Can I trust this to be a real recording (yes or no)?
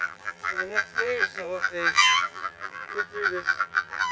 no